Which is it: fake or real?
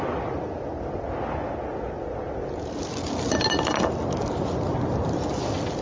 real